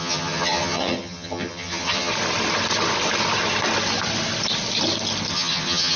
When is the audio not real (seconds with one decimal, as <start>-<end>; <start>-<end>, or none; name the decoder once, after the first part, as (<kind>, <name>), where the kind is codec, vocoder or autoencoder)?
0.0-2.1 (vocoder, HiFi-GAN); 5.3-6.0